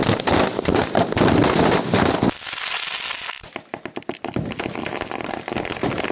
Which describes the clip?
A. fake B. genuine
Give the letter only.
B